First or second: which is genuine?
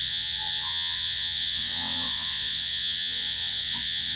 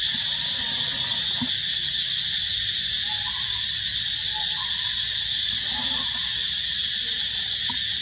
second